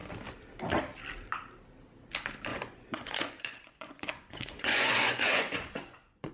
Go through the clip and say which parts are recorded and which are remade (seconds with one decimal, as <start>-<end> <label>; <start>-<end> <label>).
0.0-2.5 recorded; 2.5-6.3 remade